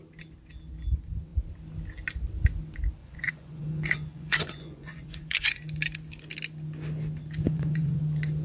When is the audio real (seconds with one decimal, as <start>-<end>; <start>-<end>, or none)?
0.0-3.0; 5.6-7.4; 8.0-8.4